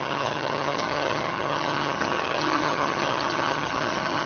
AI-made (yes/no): yes